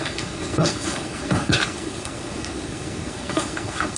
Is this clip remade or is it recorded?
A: remade